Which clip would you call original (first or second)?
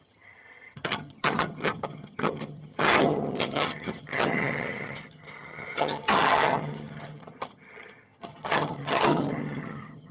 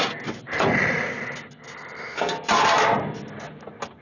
second